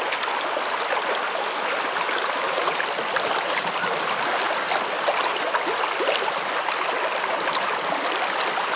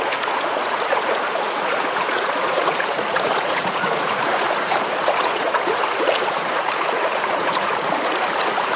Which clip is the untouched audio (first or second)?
first